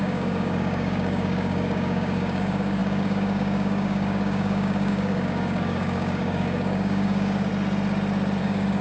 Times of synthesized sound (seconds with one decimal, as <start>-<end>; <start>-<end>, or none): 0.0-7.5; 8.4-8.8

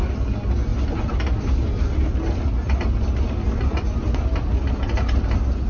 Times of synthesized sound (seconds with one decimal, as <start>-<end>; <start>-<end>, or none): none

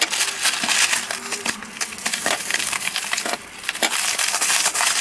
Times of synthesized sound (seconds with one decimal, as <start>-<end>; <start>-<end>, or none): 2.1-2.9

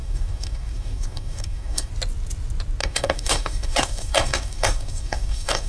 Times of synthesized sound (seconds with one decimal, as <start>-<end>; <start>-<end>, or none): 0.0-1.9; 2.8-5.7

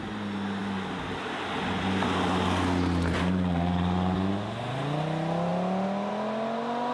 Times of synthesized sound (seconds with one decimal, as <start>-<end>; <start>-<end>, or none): none

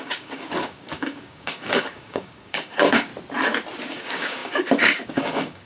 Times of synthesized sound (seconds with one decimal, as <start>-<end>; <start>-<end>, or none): 0.0-3.1; 3.9-5.7

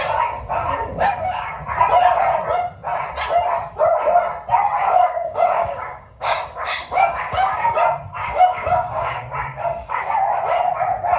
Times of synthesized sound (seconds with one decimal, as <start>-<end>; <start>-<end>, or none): 0.9-1.5; 4.8-7.8; 8.2-10.3

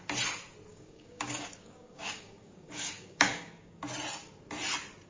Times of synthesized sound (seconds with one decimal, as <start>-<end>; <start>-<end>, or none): 0.7-3.8